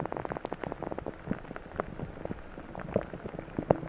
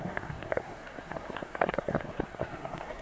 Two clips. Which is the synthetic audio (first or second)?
second